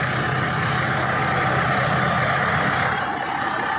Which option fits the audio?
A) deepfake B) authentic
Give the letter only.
B